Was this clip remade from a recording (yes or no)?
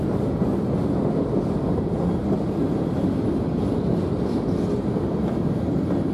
no